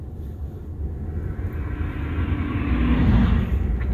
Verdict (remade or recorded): recorded